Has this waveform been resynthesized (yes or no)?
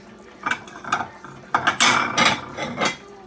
no